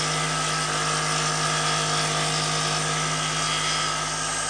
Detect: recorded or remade recorded